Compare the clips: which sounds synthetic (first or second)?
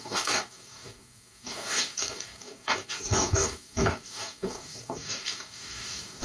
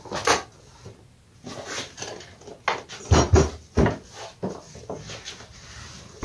first